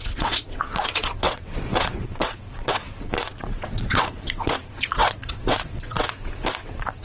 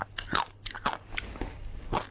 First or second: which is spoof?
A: first